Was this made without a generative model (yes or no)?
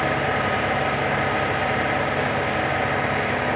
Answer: yes